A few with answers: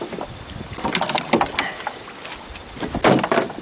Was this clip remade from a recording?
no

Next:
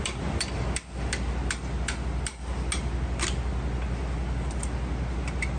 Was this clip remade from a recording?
no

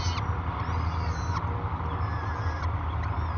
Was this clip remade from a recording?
no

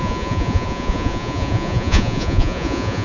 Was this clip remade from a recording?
yes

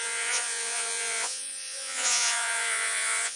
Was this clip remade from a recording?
yes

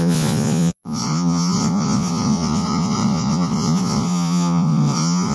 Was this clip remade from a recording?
yes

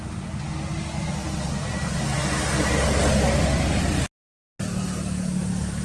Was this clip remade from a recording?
no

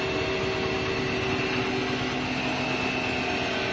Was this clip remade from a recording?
no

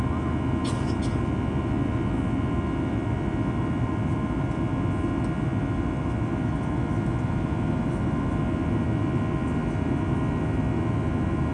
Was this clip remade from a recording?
no